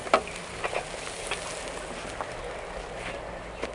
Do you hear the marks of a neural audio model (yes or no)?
no